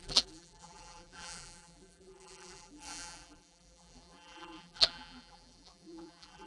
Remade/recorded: remade